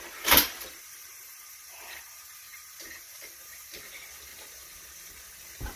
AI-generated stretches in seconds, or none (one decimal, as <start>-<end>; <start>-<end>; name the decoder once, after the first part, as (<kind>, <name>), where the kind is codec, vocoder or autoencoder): 1.0-3.8 (vocoder, BigVGAN v2)